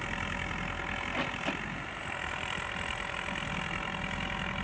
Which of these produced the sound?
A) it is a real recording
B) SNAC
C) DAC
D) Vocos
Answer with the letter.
A